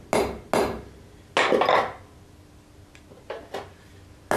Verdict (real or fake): real